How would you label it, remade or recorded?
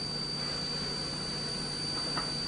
recorded